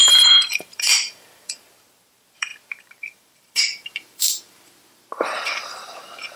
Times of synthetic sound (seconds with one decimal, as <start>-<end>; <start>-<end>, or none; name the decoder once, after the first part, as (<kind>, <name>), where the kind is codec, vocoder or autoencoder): 0.0-6.4 (vocoder, BigVGAN v2)